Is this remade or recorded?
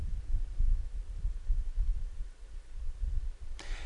recorded